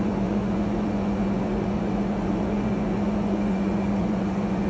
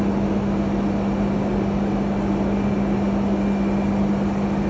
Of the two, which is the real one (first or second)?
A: second